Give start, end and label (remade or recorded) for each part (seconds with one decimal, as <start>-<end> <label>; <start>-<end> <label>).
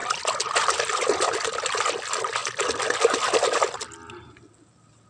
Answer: 0.0-5.1 recorded